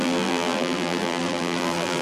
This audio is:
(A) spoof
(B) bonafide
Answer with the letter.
A